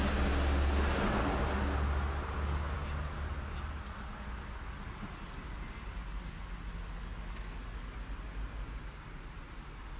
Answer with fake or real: real